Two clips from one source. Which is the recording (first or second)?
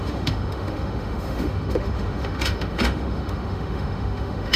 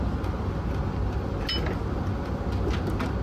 second